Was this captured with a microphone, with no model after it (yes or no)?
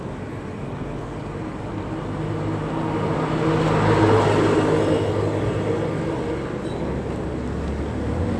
yes